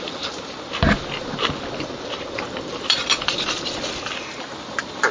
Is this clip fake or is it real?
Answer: real